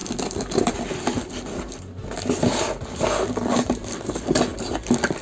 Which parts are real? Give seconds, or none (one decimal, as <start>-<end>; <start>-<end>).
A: 2.0-3.5; 4.5-5.2